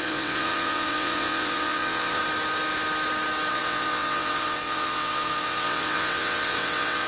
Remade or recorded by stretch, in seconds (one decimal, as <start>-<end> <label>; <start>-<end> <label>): 0.0-2.2 remade; 2.2-3.5 recorded; 3.5-7.1 remade